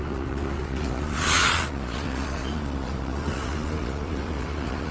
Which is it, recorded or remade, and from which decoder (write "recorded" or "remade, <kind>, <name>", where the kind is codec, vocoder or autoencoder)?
remade, vocoder, Vocos